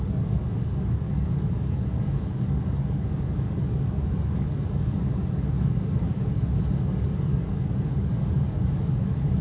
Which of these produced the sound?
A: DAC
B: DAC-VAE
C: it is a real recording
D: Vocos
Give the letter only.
A